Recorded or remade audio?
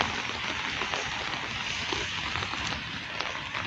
remade